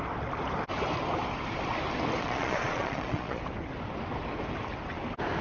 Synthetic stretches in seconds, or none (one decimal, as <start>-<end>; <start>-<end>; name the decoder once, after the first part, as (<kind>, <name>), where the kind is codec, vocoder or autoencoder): 2.2-3.4 (vocoder, Vocos)